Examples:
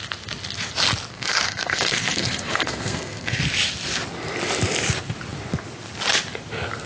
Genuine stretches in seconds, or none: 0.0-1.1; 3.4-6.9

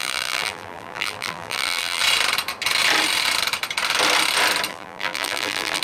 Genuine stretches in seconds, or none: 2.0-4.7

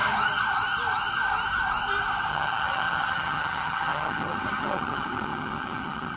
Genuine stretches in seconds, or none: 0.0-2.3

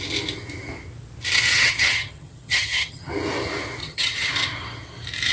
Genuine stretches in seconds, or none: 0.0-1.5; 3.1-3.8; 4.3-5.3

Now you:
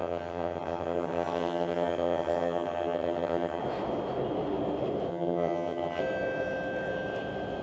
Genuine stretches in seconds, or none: 3.6-5.1; 6.0-7.6